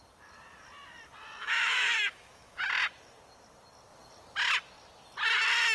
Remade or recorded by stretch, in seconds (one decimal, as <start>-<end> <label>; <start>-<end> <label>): 0.0-1.4 recorded; 1.4-2.6 remade; 2.6-5.7 recorded